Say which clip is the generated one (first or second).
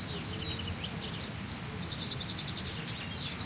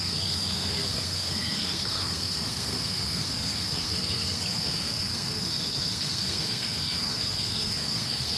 second